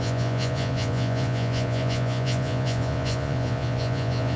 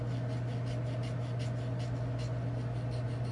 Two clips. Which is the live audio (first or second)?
second